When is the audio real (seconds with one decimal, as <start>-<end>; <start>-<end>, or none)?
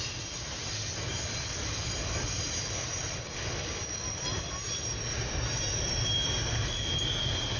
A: 0.0-7.6